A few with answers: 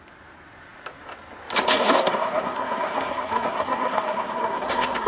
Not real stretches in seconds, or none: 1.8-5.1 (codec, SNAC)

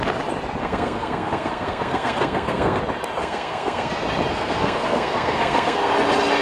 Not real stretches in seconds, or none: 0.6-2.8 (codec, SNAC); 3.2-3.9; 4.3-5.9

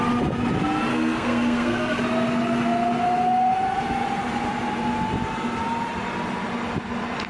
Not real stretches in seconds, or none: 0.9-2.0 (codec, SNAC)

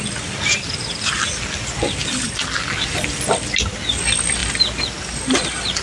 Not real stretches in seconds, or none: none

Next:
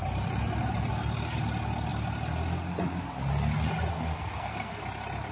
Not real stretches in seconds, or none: 3.9-4.8 (codec, SNAC)

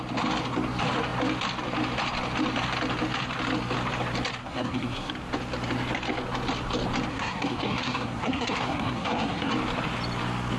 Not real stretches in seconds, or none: 4.4-5.1 (codec, SNAC); 7.1-9.5